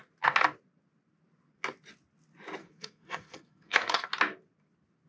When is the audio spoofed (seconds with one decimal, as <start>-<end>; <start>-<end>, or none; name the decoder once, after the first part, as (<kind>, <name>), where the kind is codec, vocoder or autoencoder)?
2.6-4.1 (codec, SNAC)